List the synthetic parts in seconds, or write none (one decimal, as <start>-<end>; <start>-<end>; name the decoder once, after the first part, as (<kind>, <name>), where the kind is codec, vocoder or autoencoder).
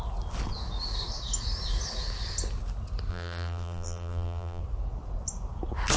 3.1-4.6 (vocoder, BigVGAN v2)